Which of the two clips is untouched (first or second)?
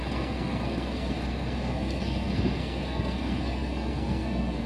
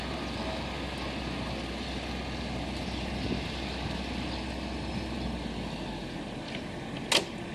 second